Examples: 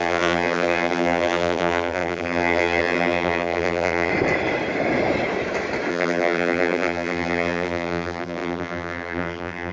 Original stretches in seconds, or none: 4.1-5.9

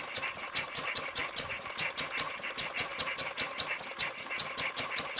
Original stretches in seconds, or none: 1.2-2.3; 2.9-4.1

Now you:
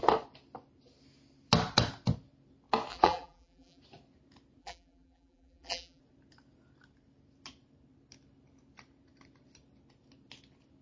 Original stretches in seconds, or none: 0.0-2.9; 3.8-4.6; 6.0-10.8